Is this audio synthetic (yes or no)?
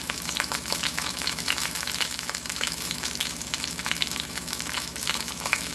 yes